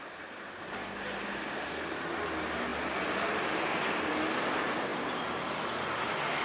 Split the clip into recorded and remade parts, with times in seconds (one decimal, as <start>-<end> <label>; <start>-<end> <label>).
0.0-6.4 recorded